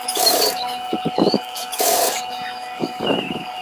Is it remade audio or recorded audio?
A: remade